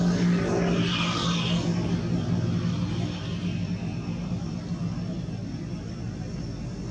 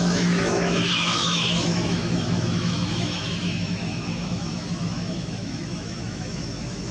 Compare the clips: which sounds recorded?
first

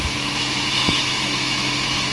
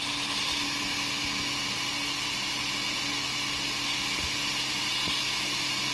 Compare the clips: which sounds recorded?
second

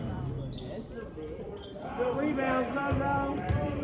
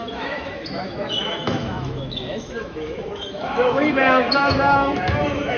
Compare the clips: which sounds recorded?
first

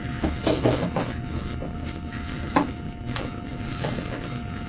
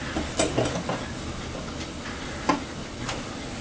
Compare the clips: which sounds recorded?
second